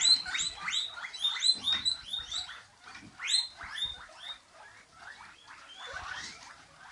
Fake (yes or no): no